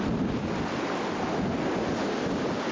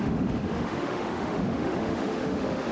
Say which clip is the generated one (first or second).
second